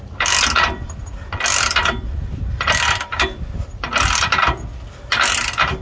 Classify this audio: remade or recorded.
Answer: recorded